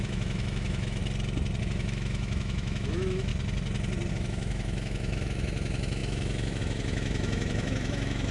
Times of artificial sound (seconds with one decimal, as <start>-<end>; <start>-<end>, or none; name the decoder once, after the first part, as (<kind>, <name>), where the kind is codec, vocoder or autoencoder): 0.0-1.0 (autoencoder, DAC-VAE); 1.6-3.3; 4.1-8.3